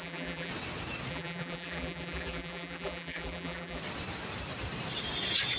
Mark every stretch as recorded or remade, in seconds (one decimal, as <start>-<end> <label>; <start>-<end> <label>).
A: 0.0-0.5 remade; 0.5-1.1 recorded; 1.1-3.8 remade; 3.8-5.6 recorded